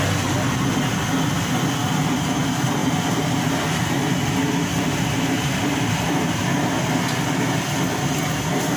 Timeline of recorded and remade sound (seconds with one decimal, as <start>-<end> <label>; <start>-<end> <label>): 0.0-2.8 recorded; 2.8-3.8 remade; 3.8-4.7 recorded; 4.7-6.9 remade; 6.9-8.8 recorded